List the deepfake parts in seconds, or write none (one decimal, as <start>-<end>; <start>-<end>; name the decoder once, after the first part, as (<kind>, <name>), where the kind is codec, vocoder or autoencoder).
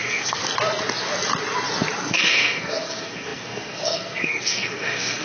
0.0-0.4 (codec, SNAC); 2.1-5.2